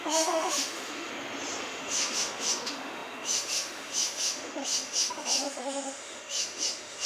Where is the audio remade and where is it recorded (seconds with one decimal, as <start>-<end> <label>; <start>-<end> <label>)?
0.0-1.1 remade; 1.1-1.6 recorded; 1.6-7.1 remade